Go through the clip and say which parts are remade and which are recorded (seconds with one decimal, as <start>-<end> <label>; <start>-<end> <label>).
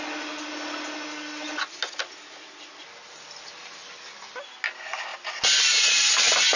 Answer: 0.0-6.6 recorded